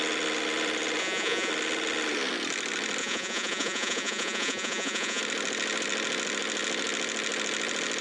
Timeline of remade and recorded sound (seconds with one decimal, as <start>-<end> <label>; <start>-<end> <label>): 0.0-1.0 recorded; 1.0-1.5 remade; 1.5-3.0 recorded; 3.0-5.2 remade; 5.2-8.0 recorded